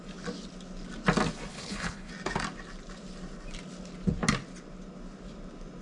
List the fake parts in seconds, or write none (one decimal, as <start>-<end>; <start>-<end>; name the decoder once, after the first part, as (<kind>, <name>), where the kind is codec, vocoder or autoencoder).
1.5-2.1 (codec, HILCodec)